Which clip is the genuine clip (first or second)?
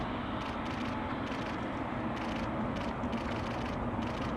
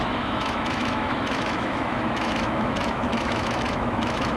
first